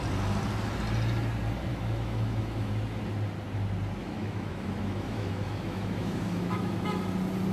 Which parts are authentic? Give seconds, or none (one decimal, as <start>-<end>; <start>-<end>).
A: 0.0-1.7; 2.7-4.0; 7.0-7.5